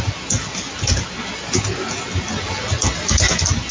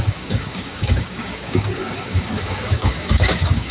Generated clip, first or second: second